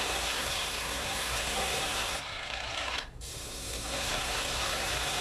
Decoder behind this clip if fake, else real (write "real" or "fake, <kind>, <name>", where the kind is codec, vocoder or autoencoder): fake, codec, SNAC